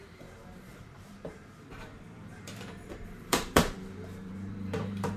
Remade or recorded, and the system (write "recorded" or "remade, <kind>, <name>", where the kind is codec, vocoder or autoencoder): remade, vocoder, BigVGAN v2